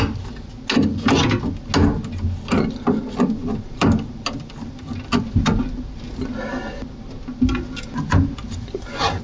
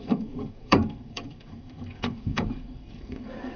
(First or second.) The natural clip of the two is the first